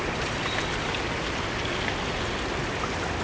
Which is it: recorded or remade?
recorded